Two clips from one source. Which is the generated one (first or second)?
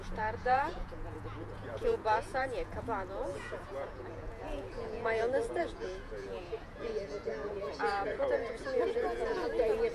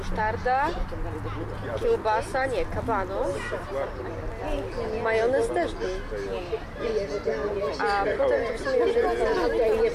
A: first